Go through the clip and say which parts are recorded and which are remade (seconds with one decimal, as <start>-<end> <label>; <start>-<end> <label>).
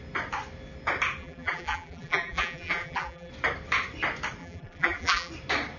0.0-1.2 recorded; 1.2-3.3 remade; 3.3-4.4 recorded; 4.4-5.3 remade; 5.3-5.8 recorded